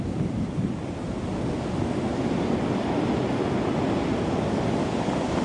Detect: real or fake real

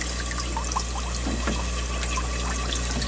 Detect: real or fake real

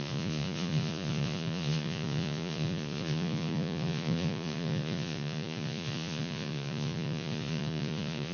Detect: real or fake fake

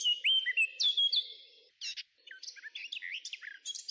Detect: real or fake real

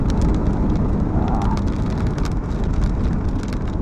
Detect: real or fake real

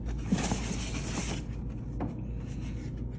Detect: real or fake real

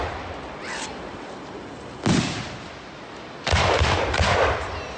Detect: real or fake real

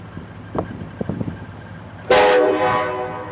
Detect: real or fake real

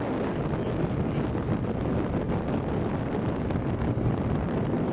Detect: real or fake real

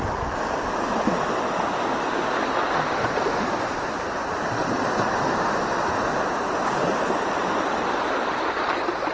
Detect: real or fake real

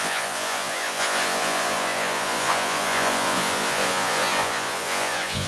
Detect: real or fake fake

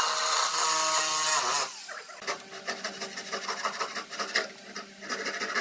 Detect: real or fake real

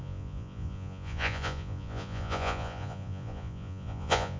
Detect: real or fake fake